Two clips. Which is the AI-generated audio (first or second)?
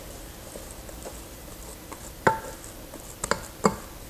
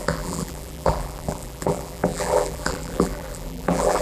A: second